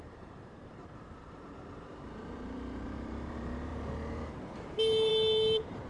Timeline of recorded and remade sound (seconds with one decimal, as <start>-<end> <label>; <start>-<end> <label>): 0.0-3.7 remade; 3.7-4.4 recorded; 4.4-5.9 remade